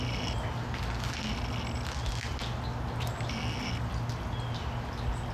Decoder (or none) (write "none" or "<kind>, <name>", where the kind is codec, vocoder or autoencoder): none